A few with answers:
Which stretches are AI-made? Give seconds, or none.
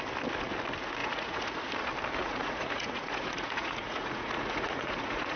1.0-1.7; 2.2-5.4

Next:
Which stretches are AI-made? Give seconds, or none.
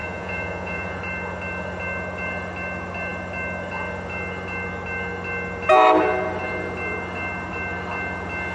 0.0-1.0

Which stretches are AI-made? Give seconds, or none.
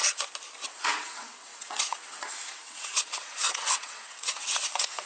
0.7-5.1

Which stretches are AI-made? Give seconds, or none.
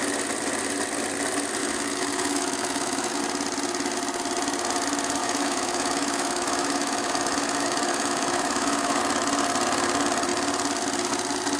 1.6-3.2; 5.2-9.0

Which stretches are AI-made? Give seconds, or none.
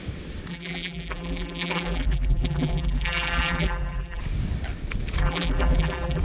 0.5-4.2; 5.2-6.2